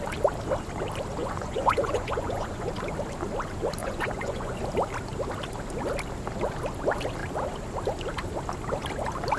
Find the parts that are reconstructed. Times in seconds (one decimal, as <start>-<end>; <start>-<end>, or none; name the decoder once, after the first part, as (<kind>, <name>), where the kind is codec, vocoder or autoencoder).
1.2-2.7 (vocoder, Vocos); 3.8-4.6